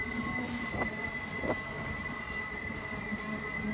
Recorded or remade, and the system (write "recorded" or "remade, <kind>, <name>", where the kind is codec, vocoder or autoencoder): recorded